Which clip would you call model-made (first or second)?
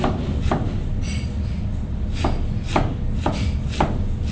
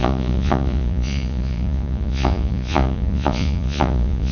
second